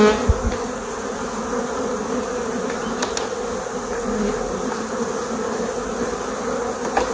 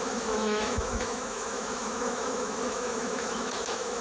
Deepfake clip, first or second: second